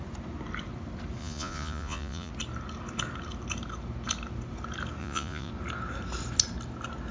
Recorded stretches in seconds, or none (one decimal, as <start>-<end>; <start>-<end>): 0.0-1.2; 2.3-5.0; 5.5-7.1